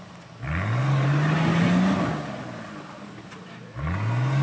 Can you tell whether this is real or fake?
real